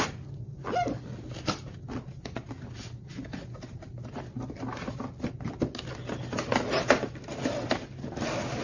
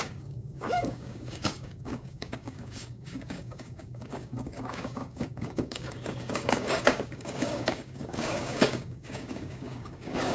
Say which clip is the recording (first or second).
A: first